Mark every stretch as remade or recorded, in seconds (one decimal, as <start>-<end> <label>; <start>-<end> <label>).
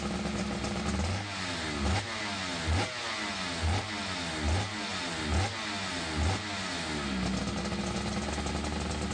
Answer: 0.0-9.1 recorded